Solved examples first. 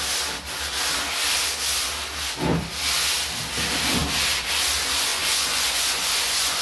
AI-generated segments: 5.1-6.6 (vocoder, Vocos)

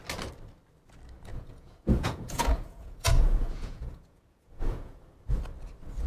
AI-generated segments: 1.3-5.0 (vocoder, Vocos)

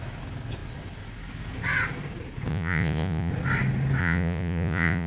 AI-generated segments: 2.5-3.3 (vocoder, Vocos); 4.0-5.1

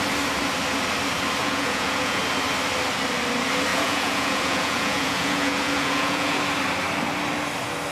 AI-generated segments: 1.4-2.2 (vocoder, Vocos); 3.7-6.4

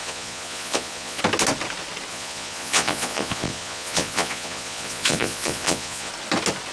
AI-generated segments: 0.0-1.2 (vocoder, Vocos); 2.1-6.1

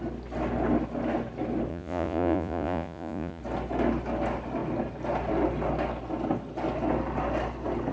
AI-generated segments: 1.7-3.4 (vocoder, Vocos)

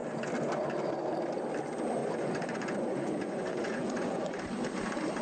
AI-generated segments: 2.0-4.4 (vocoder, Vocos)